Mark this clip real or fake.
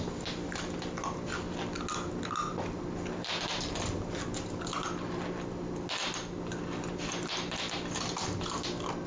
real